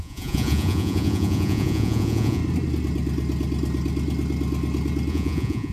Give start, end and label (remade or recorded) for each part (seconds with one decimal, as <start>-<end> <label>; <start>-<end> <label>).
0.0-2.4 remade; 2.4-5.1 recorded; 5.1-5.7 remade